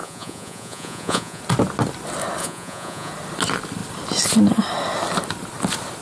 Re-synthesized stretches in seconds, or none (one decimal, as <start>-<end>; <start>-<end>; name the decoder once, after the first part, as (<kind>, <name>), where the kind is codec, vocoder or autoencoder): 0.0-1.4 (vocoder, Vocos); 2.4-3.1